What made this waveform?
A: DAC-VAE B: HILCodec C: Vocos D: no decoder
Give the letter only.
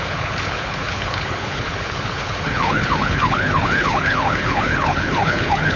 B